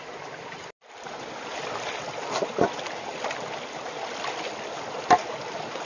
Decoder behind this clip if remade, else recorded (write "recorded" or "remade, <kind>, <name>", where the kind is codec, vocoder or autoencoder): recorded